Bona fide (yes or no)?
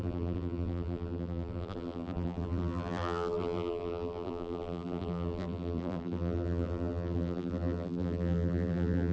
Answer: no